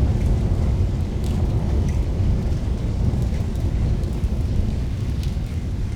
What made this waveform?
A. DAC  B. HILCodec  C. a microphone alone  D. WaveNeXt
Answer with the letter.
A